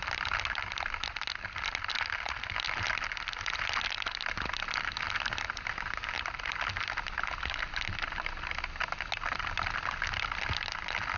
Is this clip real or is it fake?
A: real